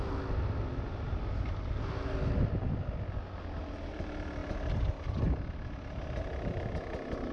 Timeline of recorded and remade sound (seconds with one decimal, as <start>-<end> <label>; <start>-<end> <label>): 0.0-7.3 recorded